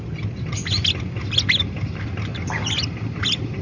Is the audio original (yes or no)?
yes